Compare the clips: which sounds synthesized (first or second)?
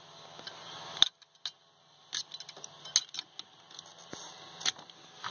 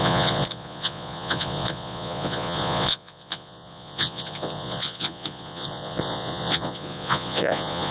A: second